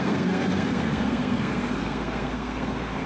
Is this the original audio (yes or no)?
no